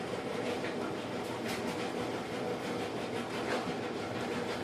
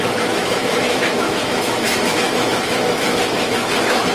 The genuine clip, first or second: first